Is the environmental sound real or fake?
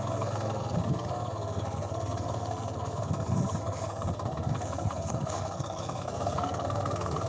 fake